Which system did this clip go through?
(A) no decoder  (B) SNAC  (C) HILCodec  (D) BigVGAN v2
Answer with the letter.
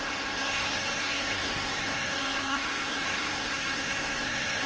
B